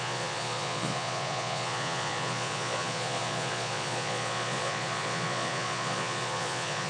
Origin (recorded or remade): remade